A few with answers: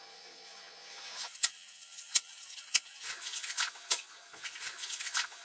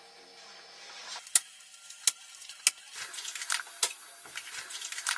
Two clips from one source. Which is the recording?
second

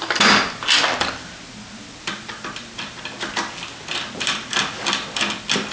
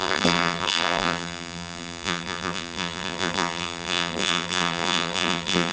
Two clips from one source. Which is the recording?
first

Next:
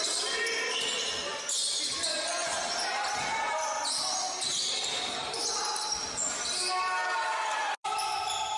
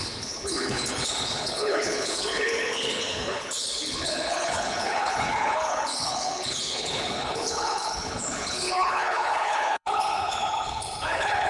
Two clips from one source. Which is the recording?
first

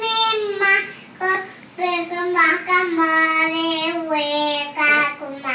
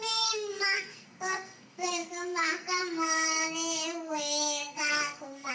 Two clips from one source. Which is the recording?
first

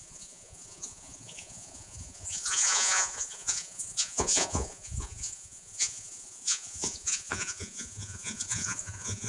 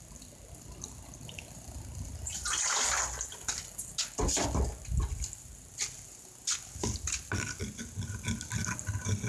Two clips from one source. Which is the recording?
second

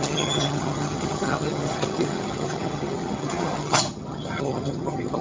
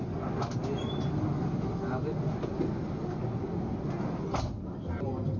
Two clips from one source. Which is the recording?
second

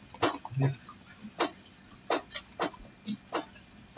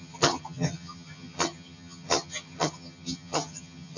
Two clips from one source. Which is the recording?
first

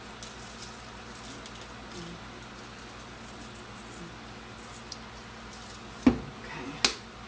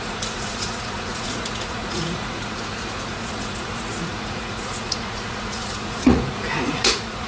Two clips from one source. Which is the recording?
first